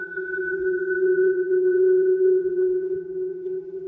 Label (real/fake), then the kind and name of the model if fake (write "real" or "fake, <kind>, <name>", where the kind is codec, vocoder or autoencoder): fake, vocoder, BigVGAN v2